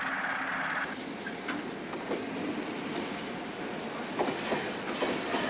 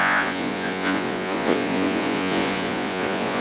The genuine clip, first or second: first